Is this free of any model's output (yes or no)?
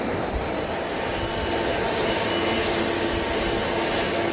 yes